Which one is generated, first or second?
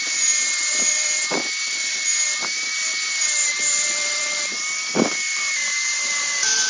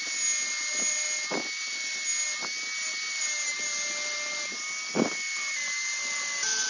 first